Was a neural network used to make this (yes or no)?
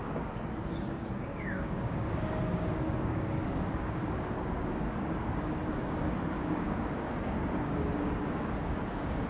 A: yes